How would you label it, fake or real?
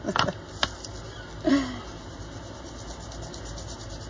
real